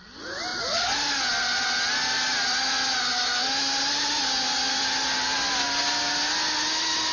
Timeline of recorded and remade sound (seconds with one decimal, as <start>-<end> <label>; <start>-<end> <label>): 0.0-7.1 recorded